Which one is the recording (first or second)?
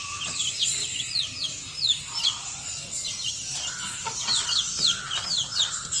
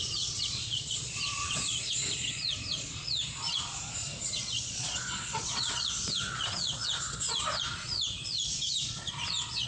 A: first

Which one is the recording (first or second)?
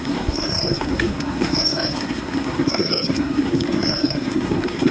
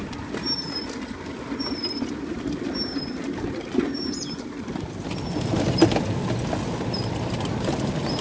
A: second